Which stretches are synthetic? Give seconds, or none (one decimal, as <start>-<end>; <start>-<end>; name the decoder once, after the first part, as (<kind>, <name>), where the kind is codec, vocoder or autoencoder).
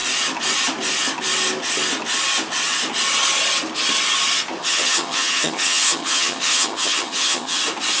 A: 4.6-7.6 (vocoder, HiFi-GAN)